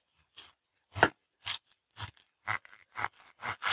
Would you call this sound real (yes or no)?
yes